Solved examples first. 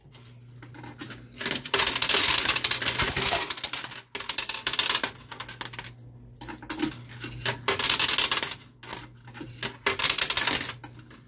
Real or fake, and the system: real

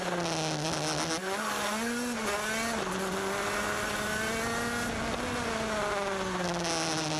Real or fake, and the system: real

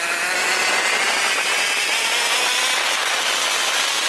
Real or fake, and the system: real